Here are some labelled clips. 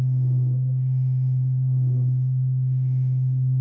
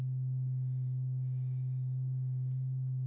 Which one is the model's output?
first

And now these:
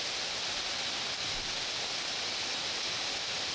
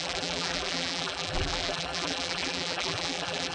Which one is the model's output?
second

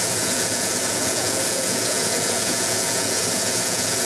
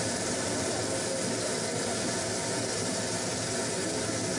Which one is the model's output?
first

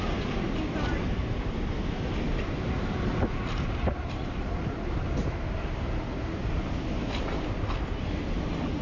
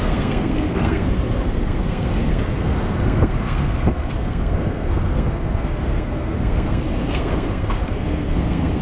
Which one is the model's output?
second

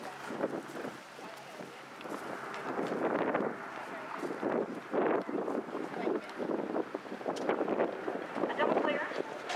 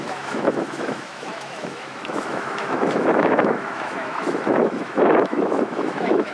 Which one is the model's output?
second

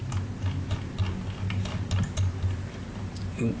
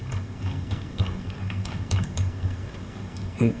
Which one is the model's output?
second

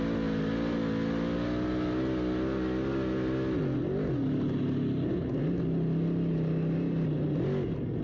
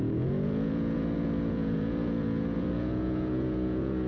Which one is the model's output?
second